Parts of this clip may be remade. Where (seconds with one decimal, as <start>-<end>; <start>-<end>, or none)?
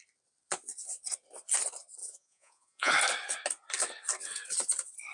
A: 2.0-2.9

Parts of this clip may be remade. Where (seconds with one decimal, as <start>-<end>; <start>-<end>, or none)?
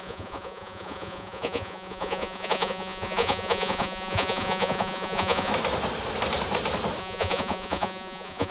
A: 0.0-5.5; 7.0-8.5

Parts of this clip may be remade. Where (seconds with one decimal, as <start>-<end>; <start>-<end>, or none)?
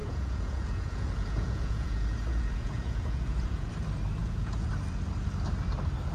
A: 0.0-3.7; 4.2-4.7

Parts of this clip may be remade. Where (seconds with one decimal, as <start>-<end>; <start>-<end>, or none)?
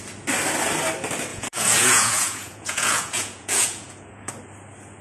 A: 1.3-4.3